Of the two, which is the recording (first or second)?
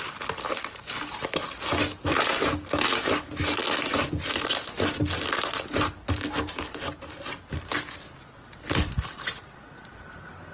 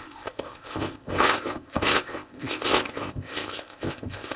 first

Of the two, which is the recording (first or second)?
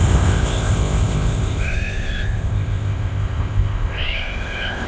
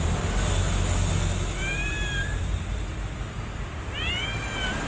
second